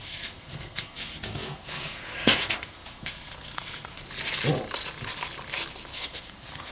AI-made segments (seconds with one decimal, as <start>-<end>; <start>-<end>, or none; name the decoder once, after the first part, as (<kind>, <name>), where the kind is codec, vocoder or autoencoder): 0.0-4.0 (codec, SNAC); 5.9-6.7